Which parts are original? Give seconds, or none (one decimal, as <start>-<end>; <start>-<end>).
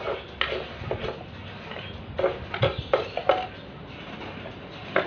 0.0-5.1